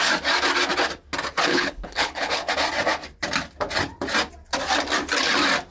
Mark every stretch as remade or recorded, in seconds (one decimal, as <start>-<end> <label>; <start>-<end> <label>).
0.0-1.5 recorded; 1.5-2.5 remade; 2.5-5.7 recorded